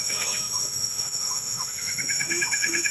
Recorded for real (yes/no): no